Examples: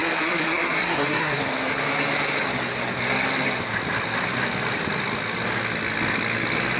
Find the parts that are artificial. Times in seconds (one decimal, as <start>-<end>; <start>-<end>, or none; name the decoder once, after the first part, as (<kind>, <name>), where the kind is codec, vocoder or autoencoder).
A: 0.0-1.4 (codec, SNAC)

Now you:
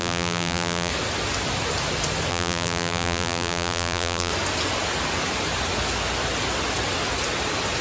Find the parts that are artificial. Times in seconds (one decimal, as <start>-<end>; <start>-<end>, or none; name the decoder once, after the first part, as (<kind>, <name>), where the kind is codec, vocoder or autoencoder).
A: 0.0-0.9 (vocoder, BigVGAN v2); 2.3-4.3

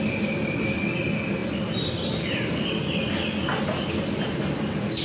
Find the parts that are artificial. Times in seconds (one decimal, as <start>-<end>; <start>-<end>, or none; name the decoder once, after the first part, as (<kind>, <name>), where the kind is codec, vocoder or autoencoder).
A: none